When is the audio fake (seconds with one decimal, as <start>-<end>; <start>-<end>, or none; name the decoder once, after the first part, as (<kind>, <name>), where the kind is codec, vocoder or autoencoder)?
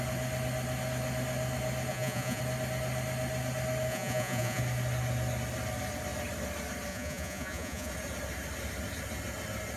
1.9-2.4 (vocoder, Vocos); 3.9-4.6; 6.9-7.9